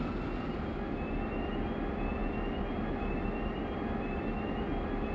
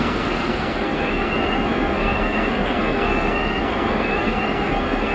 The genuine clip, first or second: first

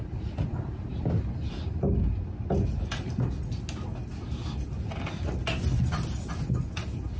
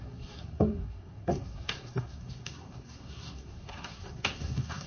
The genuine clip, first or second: first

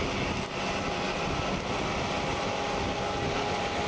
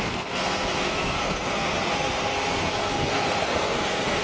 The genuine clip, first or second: first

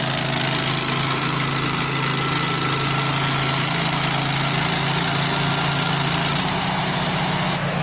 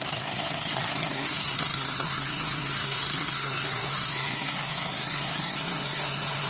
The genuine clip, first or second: first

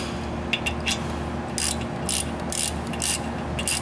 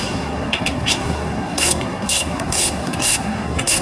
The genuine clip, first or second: first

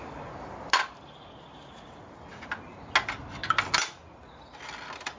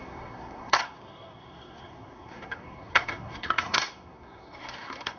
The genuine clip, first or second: first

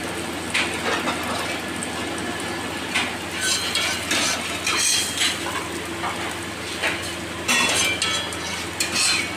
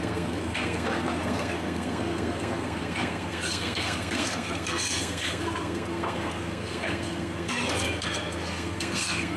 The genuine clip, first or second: first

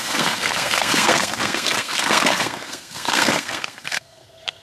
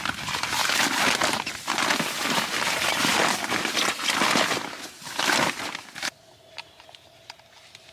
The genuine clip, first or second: second